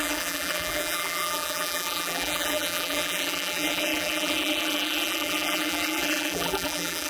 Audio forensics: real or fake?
fake